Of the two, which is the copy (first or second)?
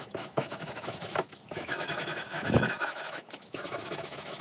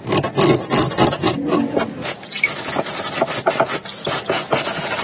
first